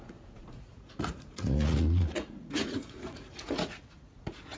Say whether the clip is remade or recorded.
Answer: remade